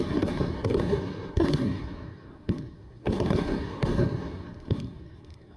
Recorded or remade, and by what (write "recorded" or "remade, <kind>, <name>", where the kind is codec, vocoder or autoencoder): remade, codec, SNAC